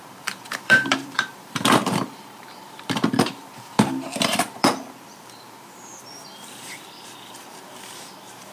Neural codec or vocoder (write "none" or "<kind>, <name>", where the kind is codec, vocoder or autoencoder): vocoder, BigVGAN v2